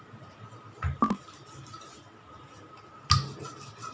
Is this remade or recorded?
recorded